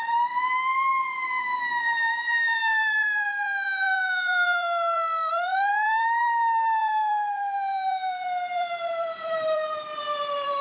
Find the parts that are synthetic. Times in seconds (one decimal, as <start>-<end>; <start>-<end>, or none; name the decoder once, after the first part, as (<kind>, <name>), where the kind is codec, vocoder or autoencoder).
0.0-10.6 (vocoder, BigVGAN v2)